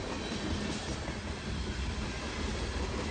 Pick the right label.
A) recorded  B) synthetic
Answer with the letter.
A